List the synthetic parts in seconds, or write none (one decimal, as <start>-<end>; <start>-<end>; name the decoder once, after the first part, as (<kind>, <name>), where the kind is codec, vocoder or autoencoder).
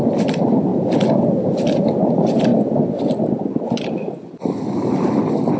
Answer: 2.5-4.6 (vocoder, BigVGAN v2)